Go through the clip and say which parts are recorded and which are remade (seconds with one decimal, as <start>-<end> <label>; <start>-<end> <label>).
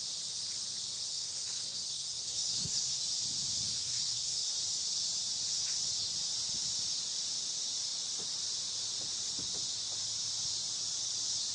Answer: 0.0-1.1 recorded; 1.1-3.0 remade; 3.0-3.8 recorded; 3.8-4.5 remade; 4.5-11.5 recorded